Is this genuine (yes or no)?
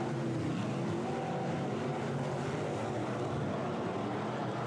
yes